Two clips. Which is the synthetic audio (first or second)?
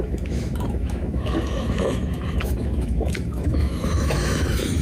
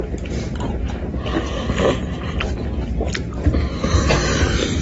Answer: first